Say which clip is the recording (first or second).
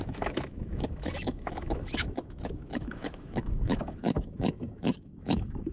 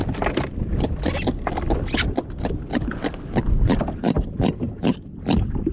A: second